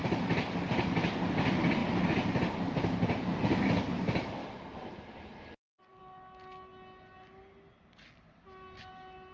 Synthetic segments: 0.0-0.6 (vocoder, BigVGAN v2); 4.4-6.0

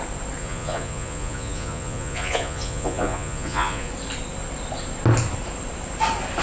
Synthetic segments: 0.4-3.9 (vocoder, Vocos)

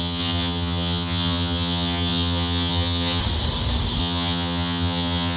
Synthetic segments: 0.0-3.2 (vocoder, HiFi-GAN); 4.0-5.4